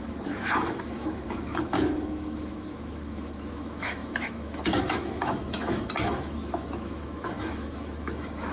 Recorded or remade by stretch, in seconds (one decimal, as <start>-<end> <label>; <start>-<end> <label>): 0.0-8.5 remade

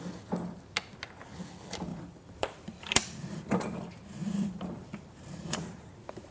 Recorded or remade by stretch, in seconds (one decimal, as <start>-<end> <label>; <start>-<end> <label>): 0.0-1.9 recorded; 1.9-3.8 remade; 3.8-4.2 recorded; 4.2-5.6 remade; 5.6-6.3 recorded

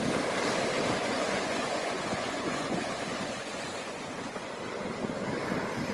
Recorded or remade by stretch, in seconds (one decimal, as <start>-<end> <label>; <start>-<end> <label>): 0.0-1.0 recorded; 1.0-4.5 remade; 4.5-5.9 recorded

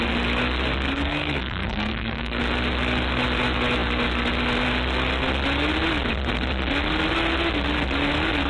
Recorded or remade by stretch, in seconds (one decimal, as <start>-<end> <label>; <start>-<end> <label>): 0.0-0.9 recorded; 0.9-2.4 remade; 2.4-8.5 recorded

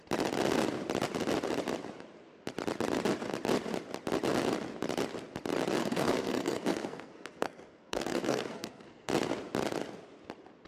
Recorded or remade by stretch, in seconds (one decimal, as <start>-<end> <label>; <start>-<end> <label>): 0.0-5.8 recorded; 5.8-9.1 remade; 9.1-10.7 recorded

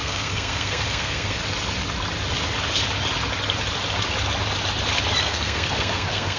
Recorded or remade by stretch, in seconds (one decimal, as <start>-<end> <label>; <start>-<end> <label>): 0.0-1.4 remade; 1.4-5.2 recorded; 5.2-6.4 remade

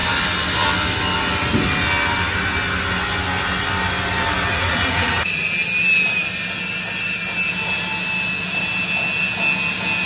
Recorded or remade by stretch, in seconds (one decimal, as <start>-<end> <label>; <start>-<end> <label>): 0.0-4.5 recorded; 4.5-5.5 remade; 5.5-10.1 recorded

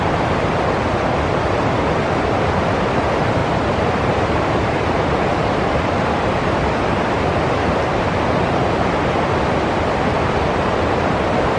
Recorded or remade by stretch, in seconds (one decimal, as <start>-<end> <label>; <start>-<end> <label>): 0.0-3.4 recorded; 3.4-8.0 remade; 8.0-11.6 recorded